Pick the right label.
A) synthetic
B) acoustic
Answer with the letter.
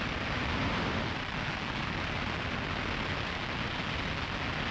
B